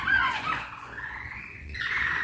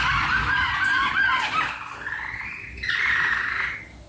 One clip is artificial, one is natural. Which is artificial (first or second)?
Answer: first